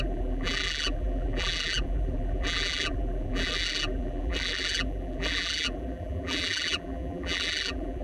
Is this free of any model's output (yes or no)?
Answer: no